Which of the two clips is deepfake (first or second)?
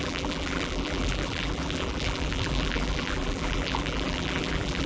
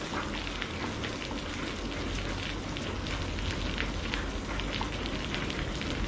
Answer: first